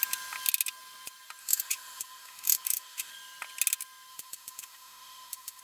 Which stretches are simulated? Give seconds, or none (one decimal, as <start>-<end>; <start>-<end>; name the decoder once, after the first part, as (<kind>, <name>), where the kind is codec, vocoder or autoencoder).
1.4-3.1 (autoencoder, DAC-VAE); 4.1-5.6